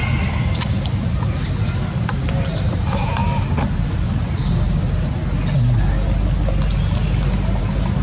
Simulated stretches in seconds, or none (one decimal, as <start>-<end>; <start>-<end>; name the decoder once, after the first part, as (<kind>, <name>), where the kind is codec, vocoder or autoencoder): none